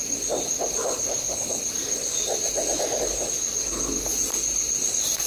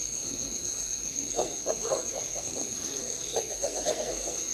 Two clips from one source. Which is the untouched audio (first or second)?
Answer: first